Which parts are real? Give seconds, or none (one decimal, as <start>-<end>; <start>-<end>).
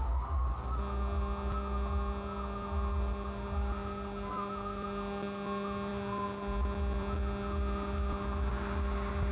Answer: 0.0-9.3